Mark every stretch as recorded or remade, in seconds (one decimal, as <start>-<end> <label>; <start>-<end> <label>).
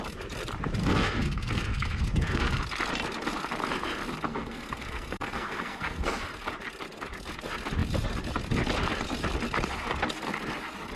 0.0-0.8 recorded; 0.8-2.6 remade; 2.6-4.3 recorded; 4.3-6.3 remade; 6.3-11.0 recorded